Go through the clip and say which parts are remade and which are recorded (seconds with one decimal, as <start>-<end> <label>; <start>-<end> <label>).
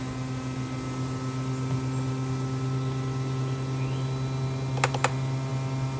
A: 0.0-6.0 recorded